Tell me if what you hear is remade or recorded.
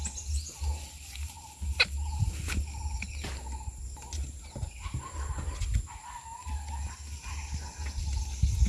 recorded